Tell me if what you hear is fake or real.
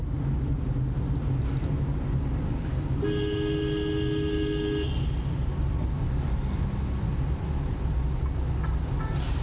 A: real